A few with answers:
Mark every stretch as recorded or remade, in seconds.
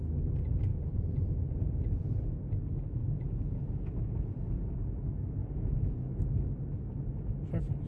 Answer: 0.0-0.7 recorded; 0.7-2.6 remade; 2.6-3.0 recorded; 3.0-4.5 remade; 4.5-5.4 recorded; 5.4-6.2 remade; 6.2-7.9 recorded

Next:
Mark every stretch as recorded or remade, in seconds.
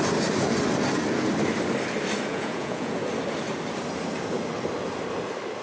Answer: 0.0-2.3 recorded; 2.3-3.0 remade; 3.0-5.6 recorded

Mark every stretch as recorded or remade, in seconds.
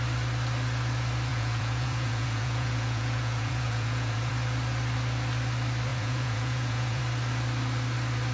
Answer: 0.0-1.3 recorded; 1.3-4.3 remade; 4.3-5.9 recorded; 5.9-7.0 remade; 7.0-8.3 recorded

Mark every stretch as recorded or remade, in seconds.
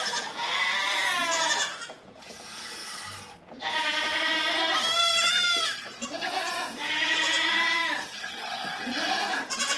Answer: 0.0-2.8 remade; 2.8-3.3 recorded; 3.3-4.1 remade; 4.1-6.1 recorded; 6.1-7.8 remade; 7.8-9.3 recorded; 9.3-9.8 remade